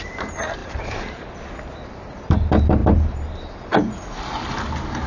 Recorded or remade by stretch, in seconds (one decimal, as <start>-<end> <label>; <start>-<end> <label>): 0.0-0.6 recorded; 0.6-1.3 remade; 1.3-2.8 recorded; 2.8-4.3 remade; 4.3-5.1 recorded